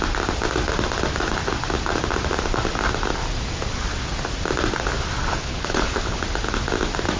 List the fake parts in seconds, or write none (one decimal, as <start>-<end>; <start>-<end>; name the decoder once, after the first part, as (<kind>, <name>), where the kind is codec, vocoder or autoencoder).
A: 5.3-6.2 (codec, HILCodec)